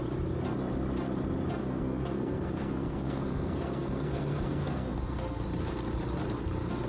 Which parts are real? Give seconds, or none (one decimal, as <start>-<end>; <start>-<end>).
0.0-1.6; 5.4-6.9